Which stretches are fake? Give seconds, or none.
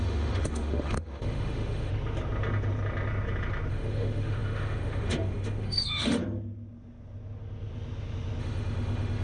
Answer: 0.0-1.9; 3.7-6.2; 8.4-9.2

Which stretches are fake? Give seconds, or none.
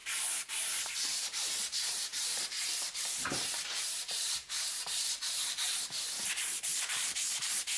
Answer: 0.8-7.8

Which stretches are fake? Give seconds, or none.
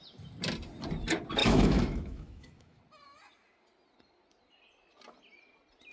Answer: 1.4-2.8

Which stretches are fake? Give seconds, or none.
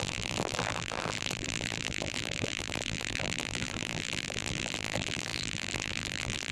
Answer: 0.0-6.5